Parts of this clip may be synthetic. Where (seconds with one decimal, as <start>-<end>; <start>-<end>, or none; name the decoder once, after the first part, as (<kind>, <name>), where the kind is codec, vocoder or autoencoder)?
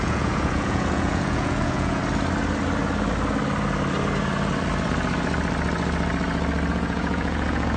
0.0-2.0 (vocoder, Vocos); 6.7-7.8